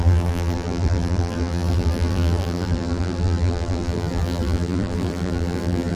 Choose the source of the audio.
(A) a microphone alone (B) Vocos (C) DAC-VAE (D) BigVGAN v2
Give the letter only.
D